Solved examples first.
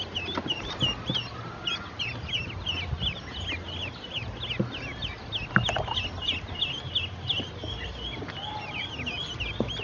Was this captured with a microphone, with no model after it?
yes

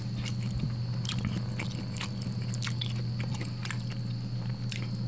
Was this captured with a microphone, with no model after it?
yes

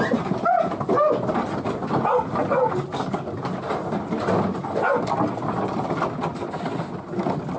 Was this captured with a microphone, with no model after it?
yes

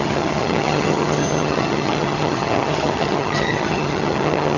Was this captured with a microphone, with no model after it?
no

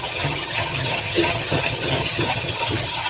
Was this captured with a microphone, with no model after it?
no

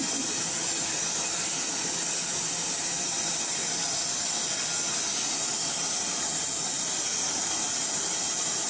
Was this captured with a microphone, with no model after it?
yes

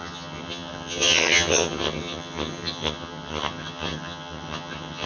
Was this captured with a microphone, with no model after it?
no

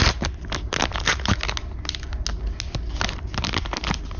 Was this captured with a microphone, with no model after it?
yes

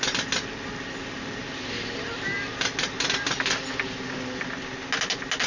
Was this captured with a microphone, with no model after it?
yes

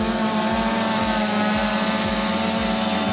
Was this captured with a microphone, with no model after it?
yes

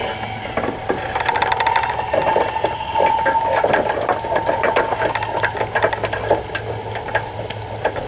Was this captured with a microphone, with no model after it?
yes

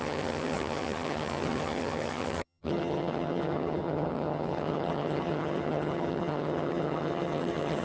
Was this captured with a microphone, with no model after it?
no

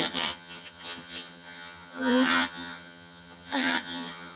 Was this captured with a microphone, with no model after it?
no